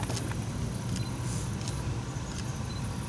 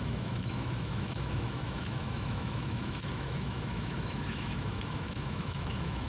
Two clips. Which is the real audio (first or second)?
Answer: first